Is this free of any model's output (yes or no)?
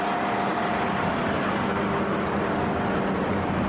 yes